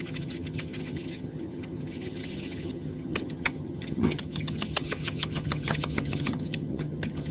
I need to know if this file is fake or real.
fake